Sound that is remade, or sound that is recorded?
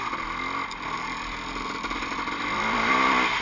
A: recorded